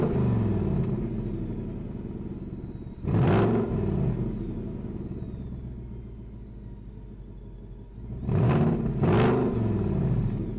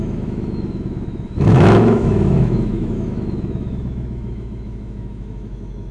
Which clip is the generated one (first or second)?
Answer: second